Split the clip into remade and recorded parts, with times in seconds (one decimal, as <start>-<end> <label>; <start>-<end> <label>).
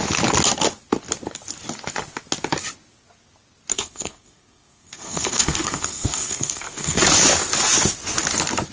0.0-3.7 recorded; 3.7-7.0 remade; 7.0-8.7 recorded